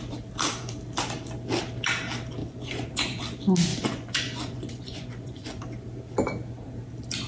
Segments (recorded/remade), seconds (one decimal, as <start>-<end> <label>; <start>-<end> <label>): 0.0-2.4 recorded; 2.4-3.2 remade; 3.2-3.7 recorded; 3.7-5.6 remade; 5.6-7.3 recorded